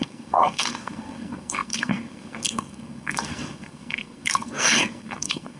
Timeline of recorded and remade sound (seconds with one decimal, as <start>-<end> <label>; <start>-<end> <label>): 0.0-5.6 remade